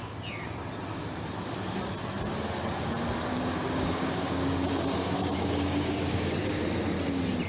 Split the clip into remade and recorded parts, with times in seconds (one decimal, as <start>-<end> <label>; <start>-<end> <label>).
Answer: 0.0-3.3 recorded; 3.3-6.6 remade; 6.6-7.5 recorded